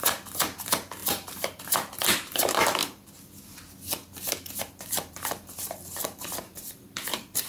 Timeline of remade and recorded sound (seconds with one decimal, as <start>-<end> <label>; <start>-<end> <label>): 0.0-2.8 remade; 2.8-4.6 recorded; 4.6-7.5 remade